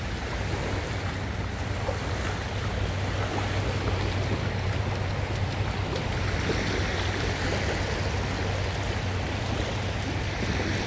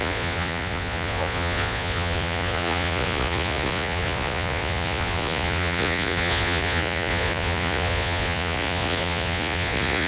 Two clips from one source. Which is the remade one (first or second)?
second